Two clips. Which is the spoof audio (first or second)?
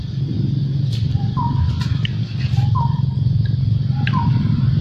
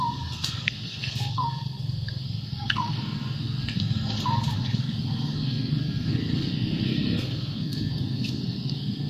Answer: second